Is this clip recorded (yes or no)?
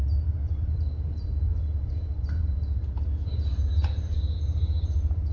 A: no